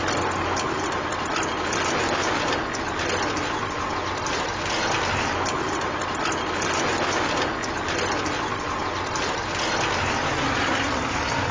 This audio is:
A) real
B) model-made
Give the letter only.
A